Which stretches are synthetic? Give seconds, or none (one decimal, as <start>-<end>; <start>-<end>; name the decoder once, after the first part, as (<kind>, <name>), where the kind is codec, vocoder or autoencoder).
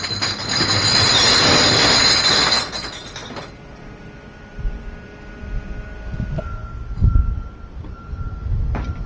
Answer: none